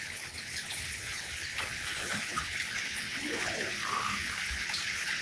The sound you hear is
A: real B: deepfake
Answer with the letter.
B